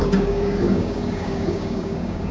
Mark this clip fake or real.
fake